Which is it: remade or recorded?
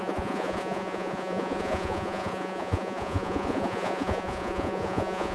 remade